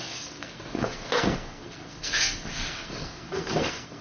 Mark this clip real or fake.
fake